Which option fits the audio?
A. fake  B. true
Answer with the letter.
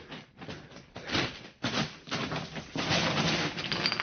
B